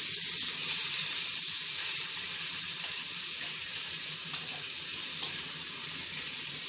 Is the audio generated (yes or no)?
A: yes